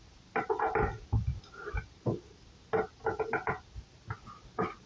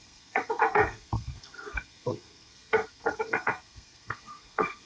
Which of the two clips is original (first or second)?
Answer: first